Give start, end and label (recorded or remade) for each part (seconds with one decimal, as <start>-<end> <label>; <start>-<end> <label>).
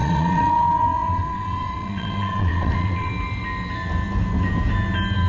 0.0-3.1 remade; 3.1-5.3 recorded